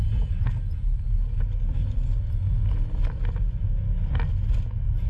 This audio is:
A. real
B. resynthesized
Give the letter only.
A